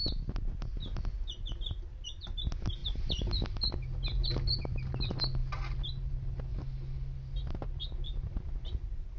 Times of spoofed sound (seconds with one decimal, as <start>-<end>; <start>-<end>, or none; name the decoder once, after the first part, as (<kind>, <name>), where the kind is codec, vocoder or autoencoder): 2.8-3.7 (vocoder, BigVGAN v2)

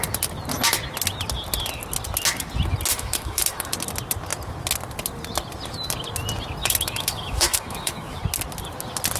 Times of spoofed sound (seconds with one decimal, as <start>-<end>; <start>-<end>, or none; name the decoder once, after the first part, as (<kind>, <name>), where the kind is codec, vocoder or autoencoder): 2.9-3.7 (autoencoder, DAC-VAE); 6.6-8.2